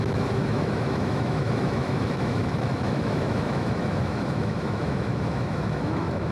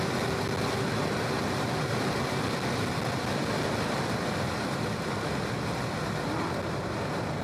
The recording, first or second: second